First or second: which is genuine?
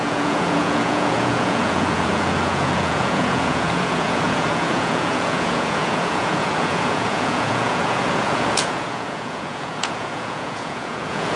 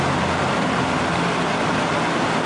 second